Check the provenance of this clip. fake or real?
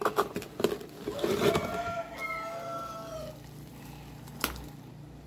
real